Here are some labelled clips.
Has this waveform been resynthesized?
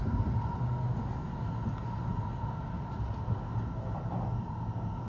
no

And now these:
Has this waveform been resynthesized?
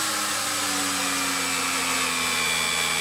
no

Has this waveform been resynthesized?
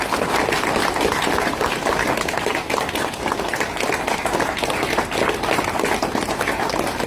no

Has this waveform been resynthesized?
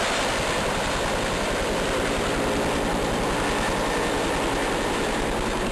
no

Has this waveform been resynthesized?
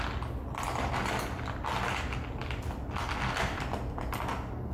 no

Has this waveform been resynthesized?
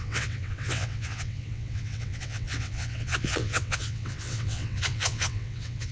yes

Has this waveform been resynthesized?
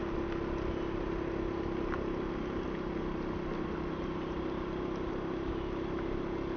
no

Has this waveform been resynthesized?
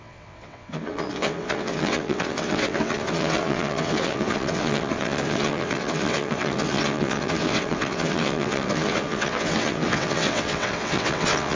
yes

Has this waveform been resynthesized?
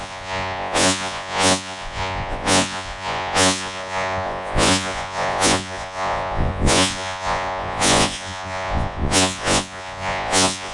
yes